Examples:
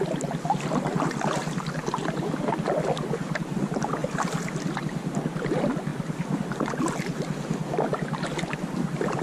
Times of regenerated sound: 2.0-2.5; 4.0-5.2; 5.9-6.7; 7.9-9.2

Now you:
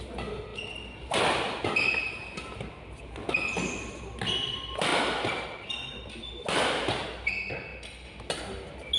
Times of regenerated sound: none

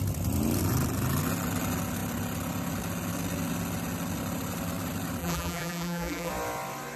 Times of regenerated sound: 5.2-6.3

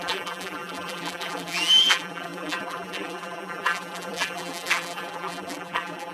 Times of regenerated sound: 0.0-6.1

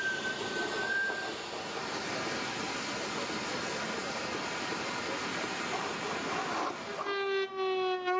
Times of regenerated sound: none